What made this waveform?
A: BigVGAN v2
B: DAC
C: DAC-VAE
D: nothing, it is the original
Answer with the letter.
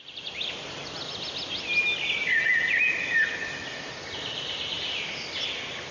D